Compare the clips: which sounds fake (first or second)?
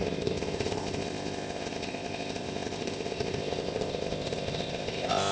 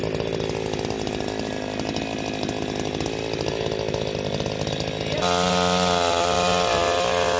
first